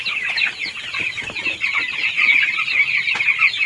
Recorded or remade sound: recorded